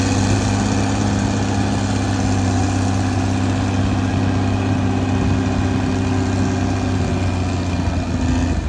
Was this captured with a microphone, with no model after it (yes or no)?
yes